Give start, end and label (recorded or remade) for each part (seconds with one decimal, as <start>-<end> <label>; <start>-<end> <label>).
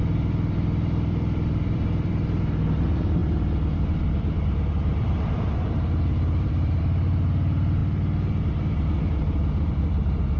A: 0.0-7.8 remade; 7.8-9.0 recorded; 9.0-10.4 remade